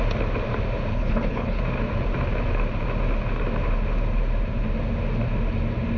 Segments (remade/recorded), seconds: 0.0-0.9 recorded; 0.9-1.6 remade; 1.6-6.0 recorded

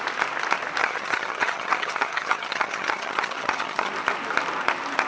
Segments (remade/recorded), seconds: 0.0-0.8 recorded; 0.8-3.9 remade; 3.9-5.1 recorded

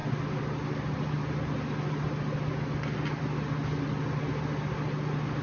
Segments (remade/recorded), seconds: 0.0-5.4 recorded

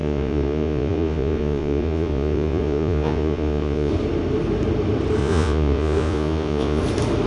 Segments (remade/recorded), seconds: 0.0-3.9 remade; 3.9-5.2 recorded; 5.2-6.8 remade; 6.8-7.3 recorded

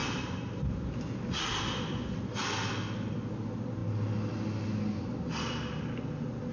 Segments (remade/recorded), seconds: 0.0-6.5 recorded

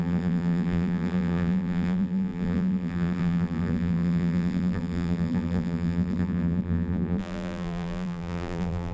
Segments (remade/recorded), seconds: 0.0-8.9 remade

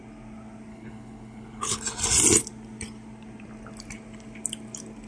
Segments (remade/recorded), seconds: 0.0-0.7 recorded; 0.7-1.8 remade; 1.8-5.1 recorded